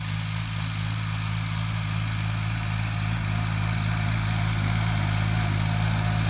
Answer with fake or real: real